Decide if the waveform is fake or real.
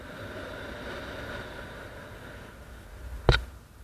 real